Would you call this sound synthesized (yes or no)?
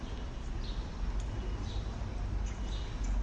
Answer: no